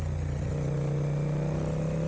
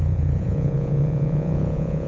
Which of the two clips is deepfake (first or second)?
second